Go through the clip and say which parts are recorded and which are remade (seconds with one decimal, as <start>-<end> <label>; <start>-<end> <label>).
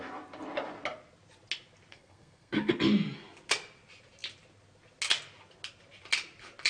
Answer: 0.0-1.9 recorded; 1.9-2.7 remade; 2.7-6.7 recorded